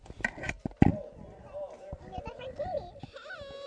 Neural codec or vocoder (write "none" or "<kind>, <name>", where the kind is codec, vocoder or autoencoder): none